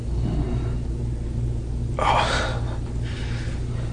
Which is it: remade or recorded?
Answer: recorded